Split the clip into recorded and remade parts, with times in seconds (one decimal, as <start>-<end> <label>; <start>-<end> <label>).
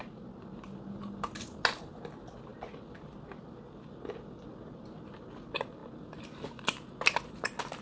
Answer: 0.0-7.8 recorded